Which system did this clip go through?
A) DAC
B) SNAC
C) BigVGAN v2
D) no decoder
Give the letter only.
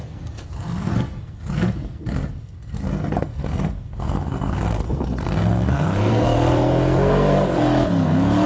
B